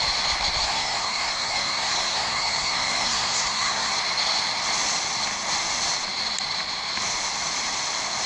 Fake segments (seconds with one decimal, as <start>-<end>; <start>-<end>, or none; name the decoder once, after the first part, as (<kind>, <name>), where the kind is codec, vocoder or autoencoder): 0.6-3.9 (codec, SNAC)

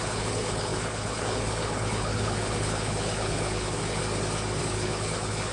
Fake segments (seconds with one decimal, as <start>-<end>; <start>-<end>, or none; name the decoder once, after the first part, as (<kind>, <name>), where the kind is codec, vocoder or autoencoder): 0.0-4.0 (codec, HILCodec); 4.6-5.5

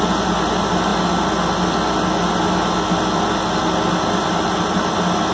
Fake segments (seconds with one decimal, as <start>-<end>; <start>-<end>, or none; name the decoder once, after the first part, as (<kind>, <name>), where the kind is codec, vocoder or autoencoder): none

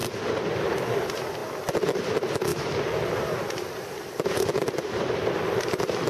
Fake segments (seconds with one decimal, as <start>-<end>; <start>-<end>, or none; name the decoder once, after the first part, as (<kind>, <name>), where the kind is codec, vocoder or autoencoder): 2.5-5.1 (vocoder, BigVGAN v2)

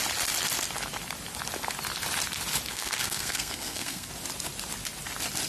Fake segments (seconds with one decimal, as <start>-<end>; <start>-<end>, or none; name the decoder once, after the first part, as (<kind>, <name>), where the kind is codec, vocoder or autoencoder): 2.7-4.1 (codec, SNAC)

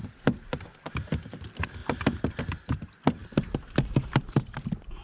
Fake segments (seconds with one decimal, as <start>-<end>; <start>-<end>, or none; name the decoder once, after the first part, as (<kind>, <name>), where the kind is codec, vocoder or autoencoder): none